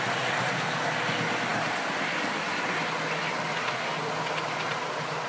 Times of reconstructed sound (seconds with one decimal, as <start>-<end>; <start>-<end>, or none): none